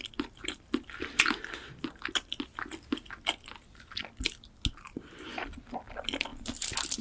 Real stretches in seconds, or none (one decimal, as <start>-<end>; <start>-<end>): 0.0-7.0